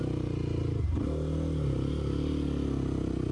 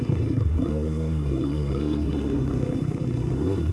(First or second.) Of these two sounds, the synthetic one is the second